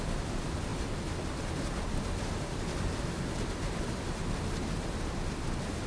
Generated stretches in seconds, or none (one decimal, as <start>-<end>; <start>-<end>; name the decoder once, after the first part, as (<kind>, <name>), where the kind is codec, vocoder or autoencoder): none